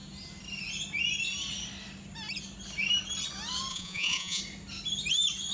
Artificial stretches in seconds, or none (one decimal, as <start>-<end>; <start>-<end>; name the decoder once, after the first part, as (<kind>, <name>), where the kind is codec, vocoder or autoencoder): 3.7-4.4 (vocoder, Vocos)

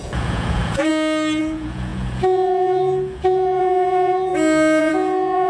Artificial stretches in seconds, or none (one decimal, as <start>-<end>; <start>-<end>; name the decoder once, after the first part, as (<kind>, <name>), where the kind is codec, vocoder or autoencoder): 0.0-0.9 (vocoder, Vocos); 1.4-4.3; 4.8-5.5

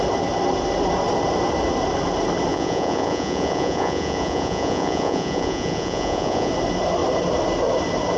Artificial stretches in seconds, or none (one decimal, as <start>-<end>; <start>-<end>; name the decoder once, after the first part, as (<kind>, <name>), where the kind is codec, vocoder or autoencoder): 2.5-6.5 (vocoder, Vocos)

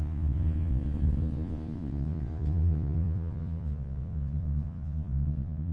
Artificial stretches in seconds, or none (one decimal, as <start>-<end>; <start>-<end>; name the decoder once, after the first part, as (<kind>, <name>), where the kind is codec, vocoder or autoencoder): 0.0-5.7 (vocoder, Vocos)

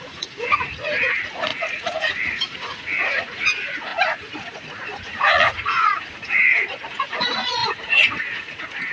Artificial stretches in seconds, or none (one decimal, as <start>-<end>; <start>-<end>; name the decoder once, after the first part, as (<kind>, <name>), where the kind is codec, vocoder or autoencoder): 0.0-8.9 (vocoder, Vocos)

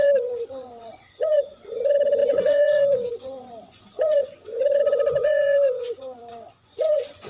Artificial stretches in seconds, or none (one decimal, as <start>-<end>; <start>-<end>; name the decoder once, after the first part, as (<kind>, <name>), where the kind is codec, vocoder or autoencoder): 0.0-7.3 (vocoder, Vocos)

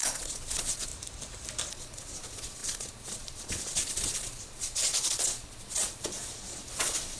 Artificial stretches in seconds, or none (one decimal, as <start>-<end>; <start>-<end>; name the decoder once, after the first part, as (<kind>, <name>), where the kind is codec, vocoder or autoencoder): 0.0-0.9 (vocoder, Vocos); 1.7-7.2

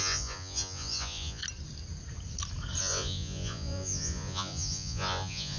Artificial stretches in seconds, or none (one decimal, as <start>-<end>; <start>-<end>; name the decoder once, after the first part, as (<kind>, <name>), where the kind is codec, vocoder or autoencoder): 0.0-1.4 (vocoder, Vocos); 2.8-5.6